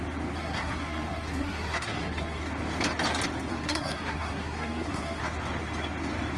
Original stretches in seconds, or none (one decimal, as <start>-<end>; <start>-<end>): 0.0-0.4; 2.4-3.5; 5.2-6.4